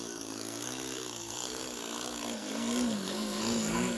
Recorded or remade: remade